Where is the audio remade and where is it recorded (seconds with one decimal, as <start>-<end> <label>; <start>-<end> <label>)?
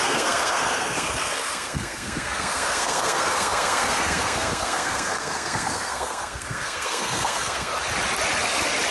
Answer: 0.0-7.7 remade; 7.7-8.9 recorded